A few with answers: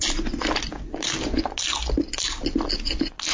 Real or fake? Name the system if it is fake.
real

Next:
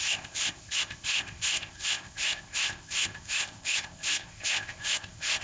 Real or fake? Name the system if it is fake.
fake, codec, ZipCodec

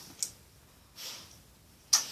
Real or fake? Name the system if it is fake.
real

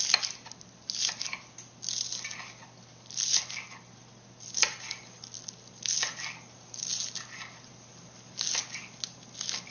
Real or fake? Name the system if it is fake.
real